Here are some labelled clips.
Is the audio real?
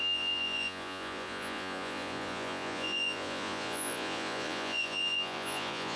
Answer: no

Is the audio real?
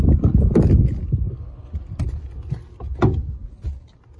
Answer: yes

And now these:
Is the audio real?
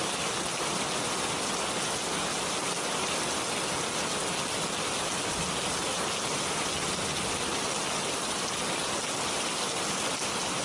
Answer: yes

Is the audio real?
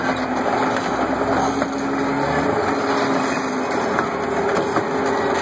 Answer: yes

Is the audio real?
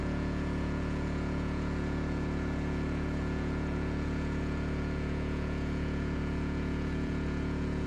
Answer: no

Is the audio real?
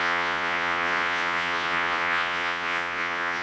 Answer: no